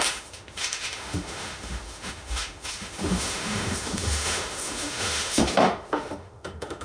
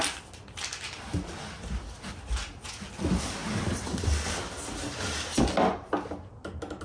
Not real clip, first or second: first